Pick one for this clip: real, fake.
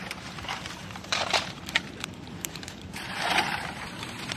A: fake